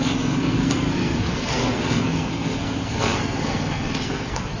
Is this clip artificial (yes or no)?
yes